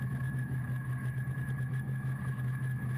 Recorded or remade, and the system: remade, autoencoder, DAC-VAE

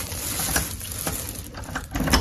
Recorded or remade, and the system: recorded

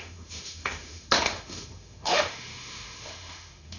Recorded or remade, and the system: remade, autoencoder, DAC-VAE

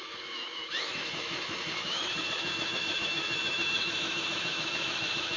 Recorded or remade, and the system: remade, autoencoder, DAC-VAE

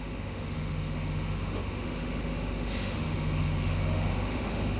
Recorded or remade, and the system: remade, autoencoder, DAC-VAE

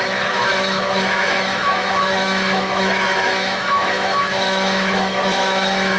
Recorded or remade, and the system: remade, autoencoder, DAC-VAE